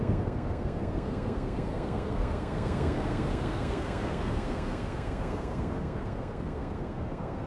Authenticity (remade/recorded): remade